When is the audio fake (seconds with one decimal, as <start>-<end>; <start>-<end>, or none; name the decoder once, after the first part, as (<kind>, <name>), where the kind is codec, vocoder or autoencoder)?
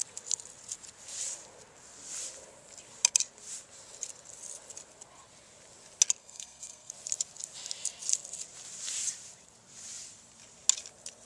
6.2-6.9 (codec, SNAC)